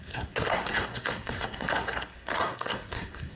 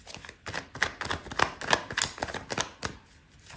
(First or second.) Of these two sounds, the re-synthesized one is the first